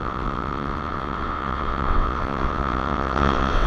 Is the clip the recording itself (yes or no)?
no